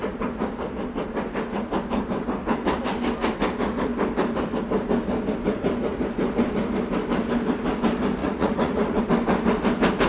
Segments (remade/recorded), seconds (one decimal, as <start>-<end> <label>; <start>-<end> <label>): 0.0-8.2 recorded; 8.2-9.0 remade; 9.0-10.1 recorded